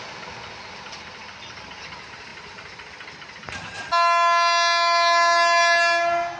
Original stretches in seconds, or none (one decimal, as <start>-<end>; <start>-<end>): 0.0-6.4